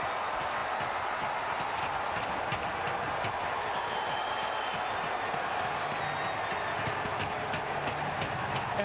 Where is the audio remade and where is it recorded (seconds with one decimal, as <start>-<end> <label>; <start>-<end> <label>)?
0.0-8.8 recorded